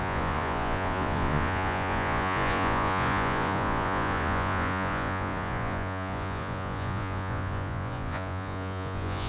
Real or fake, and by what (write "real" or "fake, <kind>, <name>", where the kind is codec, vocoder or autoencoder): fake, vocoder, Vocos